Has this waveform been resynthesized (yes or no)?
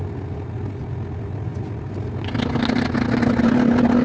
no